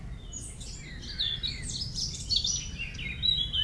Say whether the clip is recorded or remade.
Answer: recorded